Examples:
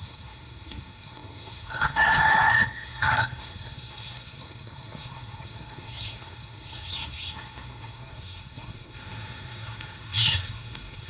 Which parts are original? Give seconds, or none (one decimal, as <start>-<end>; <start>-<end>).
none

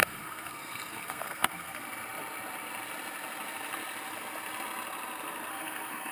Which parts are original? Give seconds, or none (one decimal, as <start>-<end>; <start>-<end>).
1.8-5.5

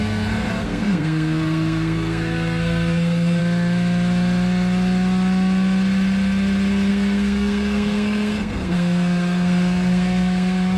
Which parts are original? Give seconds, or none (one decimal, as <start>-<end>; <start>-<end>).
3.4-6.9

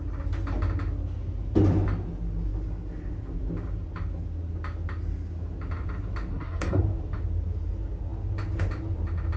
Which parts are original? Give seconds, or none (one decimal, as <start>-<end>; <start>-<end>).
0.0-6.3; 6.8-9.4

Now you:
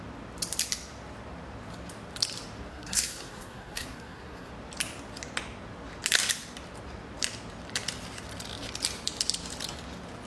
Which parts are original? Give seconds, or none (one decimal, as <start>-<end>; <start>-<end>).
0.0-2.7; 4.5-10.3

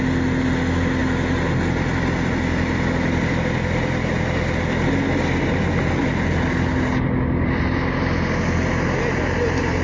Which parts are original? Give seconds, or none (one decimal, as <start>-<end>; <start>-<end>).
0.0-9.8

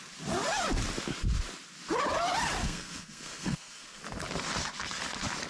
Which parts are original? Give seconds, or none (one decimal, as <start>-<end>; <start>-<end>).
0.0-2.6; 4.0-5.5